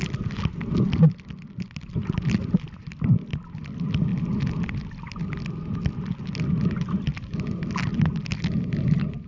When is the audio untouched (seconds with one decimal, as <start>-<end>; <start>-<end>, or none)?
0.0-9.3